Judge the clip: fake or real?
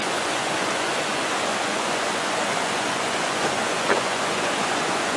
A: fake